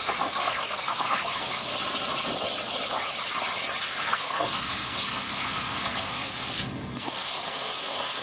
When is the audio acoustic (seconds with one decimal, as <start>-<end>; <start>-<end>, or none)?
1.7-4.0